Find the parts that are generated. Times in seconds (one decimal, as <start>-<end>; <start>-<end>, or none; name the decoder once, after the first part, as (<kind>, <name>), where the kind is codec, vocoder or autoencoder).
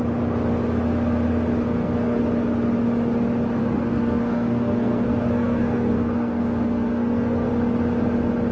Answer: 1.6-2.2 (codec, SNAC); 3.6-7.5